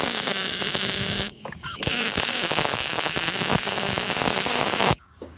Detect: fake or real fake